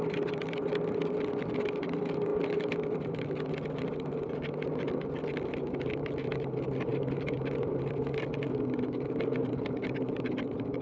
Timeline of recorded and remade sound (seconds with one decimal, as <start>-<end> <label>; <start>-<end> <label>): 0.0-10.8 recorded

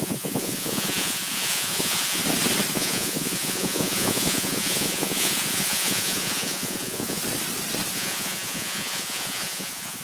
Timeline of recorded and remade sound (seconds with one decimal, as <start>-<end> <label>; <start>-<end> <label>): 0.0-2.2 remade; 2.2-2.7 recorded; 2.7-7.2 remade; 7.2-7.9 recorded; 7.9-10.0 remade

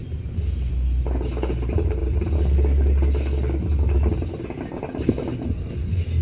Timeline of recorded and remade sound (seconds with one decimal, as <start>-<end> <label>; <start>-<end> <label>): 0.0-6.2 recorded

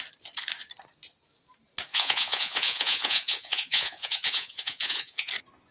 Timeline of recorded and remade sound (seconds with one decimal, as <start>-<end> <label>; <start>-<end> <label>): 0.0-1.9 recorded; 1.9-5.3 remade; 5.3-5.7 recorded

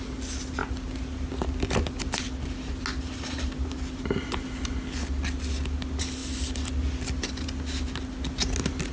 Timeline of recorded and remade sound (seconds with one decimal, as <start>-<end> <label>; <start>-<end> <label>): 0.0-8.9 recorded

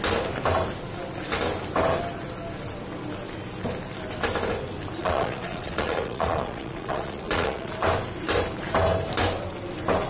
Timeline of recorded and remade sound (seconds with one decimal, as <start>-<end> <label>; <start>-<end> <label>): 0.0-5.0 recorded; 5.0-7.7 remade; 7.7-10.1 recorded

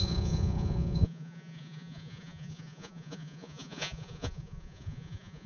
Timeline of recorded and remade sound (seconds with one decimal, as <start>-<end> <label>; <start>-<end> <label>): 0.0-5.5 remade

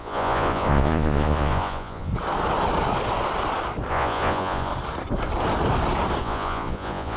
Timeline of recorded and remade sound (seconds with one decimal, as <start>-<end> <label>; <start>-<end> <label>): 0.0-2.1 remade; 2.1-3.9 recorded; 3.9-4.7 remade; 4.7-6.2 recorded; 6.2-7.2 remade